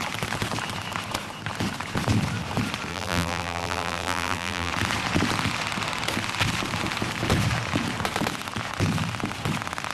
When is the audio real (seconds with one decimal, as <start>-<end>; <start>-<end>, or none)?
0.0-2.9; 4.7-9.9